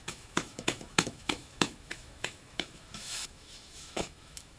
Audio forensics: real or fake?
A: fake